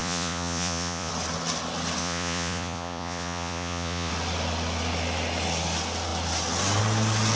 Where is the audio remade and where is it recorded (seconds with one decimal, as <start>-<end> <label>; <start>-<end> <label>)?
0.0-1.1 remade; 1.1-2.0 recorded; 2.0-4.1 remade; 4.1-7.4 recorded